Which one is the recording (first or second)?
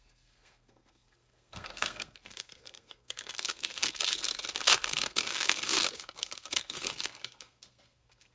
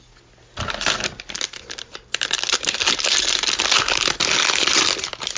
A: second